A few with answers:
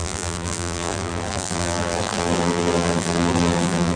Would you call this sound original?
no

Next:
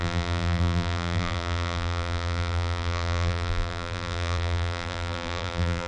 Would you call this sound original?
no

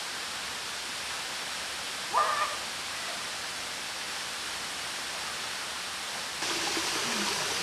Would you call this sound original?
yes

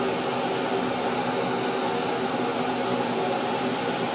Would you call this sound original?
yes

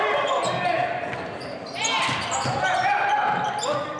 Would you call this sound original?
yes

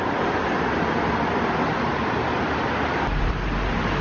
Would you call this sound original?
yes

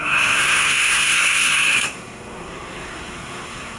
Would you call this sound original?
no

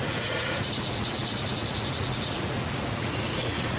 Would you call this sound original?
no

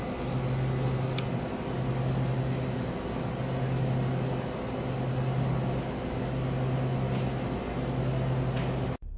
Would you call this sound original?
yes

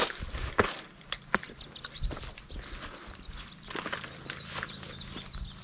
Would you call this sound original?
yes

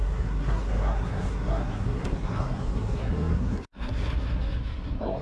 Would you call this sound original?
no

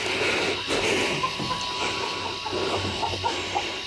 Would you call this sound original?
yes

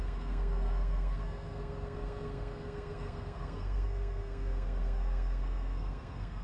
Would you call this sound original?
no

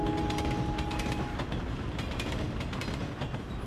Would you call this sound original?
yes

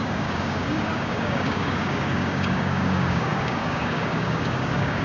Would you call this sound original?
no